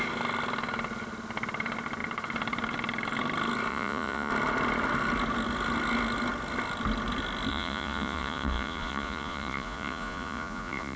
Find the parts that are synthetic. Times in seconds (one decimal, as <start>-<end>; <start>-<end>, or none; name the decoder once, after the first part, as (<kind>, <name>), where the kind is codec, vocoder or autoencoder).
3.7-4.3 (vocoder, Vocos); 7.5-11.0